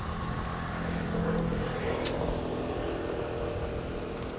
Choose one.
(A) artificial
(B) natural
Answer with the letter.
B